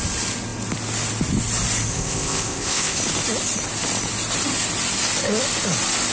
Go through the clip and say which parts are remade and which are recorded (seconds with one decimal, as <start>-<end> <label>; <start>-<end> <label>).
0.0-1.9 recorded; 1.9-3.0 remade; 3.0-6.1 recorded